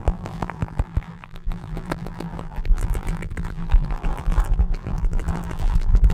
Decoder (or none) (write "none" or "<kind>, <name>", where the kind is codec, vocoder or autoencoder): vocoder, BigVGAN v2